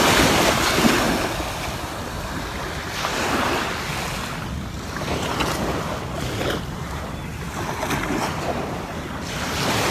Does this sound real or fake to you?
real